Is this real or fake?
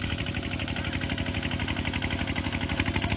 real